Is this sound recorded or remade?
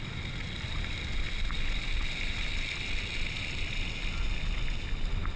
recorded